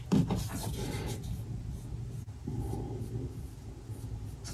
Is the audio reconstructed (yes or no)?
no